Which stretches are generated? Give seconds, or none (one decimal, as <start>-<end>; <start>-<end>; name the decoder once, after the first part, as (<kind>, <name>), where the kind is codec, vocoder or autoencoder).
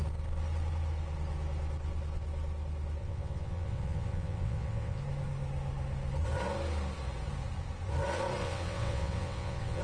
3.0-5.0 (vocoder, WaveNeXt); 8.4-9.8